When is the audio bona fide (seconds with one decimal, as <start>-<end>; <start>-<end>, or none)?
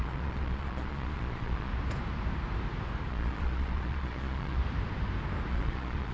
1.7-3.1; 4.6-5.5